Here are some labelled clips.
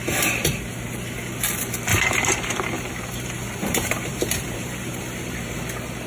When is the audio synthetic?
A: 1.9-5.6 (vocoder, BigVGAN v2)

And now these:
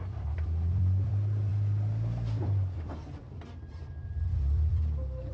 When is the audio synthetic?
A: 0.0-5.3 (vocoder, BigVGAN v2)

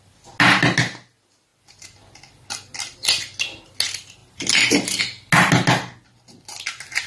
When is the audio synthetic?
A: 4.2-5.0 (vocoder, BigVGAN v2)

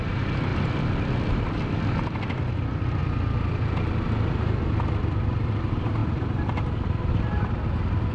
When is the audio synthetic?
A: 0.5-1.6 (vocoder, BigVGAN v2); 6.0-7.1

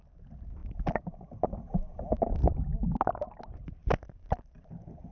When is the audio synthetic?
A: none